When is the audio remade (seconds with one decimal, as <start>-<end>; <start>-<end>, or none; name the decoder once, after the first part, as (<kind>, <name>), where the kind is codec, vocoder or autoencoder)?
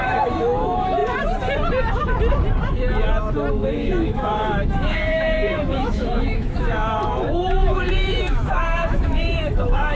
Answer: 0.0-1.0 (autoencoder, DAC-VAE); 3.5-9.9